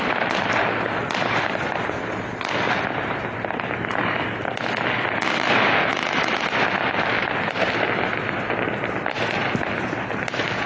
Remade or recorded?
recorded